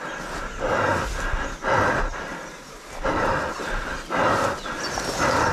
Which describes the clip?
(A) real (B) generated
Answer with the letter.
A